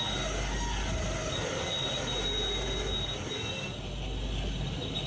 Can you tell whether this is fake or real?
real